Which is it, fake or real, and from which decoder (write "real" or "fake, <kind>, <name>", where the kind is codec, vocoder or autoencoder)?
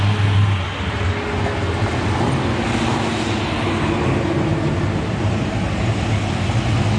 real